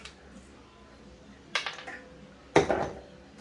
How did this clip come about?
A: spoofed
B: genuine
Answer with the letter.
B